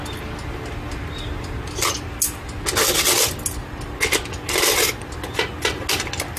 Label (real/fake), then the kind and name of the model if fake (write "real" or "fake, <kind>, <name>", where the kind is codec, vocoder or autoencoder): real